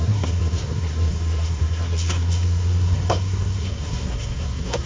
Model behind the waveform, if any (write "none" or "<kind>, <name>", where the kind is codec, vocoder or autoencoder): codec, SNAC